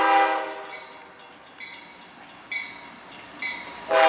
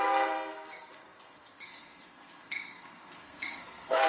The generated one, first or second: second